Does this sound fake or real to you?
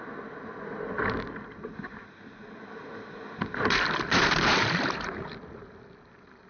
real